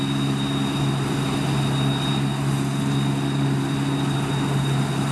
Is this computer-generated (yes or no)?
no